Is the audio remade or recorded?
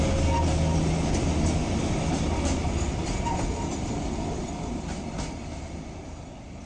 recorded